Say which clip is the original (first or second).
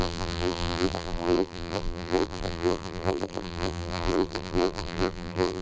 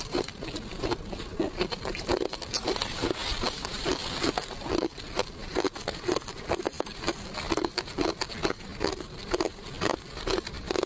second